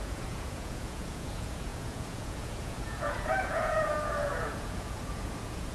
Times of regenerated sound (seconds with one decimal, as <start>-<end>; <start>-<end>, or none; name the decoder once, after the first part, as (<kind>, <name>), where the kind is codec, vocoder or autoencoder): 0.0-5.7 (vocoder, Vocos)

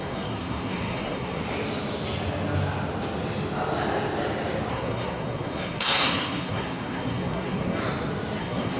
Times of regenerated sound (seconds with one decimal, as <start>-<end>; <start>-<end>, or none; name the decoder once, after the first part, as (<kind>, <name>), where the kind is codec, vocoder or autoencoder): 0.0-1.4 (codec, SNAC); 4.7-7.8; 8.4-8.8

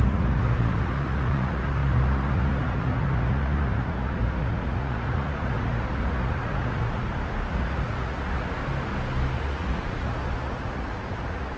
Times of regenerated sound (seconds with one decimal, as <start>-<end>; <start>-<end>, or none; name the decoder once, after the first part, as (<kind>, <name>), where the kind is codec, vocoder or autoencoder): 0.0-7.0 (vocoder, Vocos); 7.5-8.6; 9.3-11.6

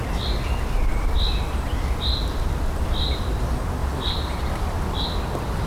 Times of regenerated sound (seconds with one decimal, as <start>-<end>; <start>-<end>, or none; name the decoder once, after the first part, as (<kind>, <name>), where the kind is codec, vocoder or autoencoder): 3.8-5.0 (vocoder, BigVGAN v2)

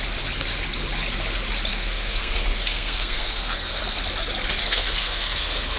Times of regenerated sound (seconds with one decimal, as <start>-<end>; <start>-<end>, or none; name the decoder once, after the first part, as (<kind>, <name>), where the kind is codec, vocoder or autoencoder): 1.7-3.8 (codec, SNAC); 4.6-5.8

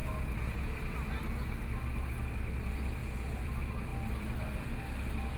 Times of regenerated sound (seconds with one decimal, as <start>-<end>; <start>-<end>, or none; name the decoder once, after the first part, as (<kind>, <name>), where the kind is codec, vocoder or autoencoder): 0.0-0.7 (vocoder, Vocos); 3.0-3.5